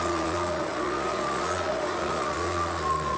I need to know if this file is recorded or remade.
remade